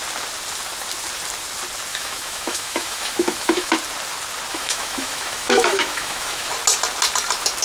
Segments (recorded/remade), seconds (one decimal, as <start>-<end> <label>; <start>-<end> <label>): 0.0-1.9 recorded; 1.9-3.7 remade; 3.7-4.5 recorded; 4.5-6.5 remade; 6.5-7.6 recorded